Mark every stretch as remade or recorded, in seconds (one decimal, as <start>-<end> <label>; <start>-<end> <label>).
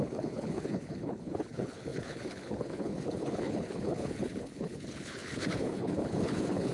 0.0-6.7 remade